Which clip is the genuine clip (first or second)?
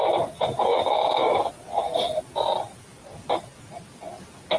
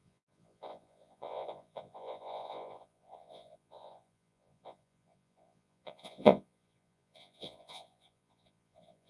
first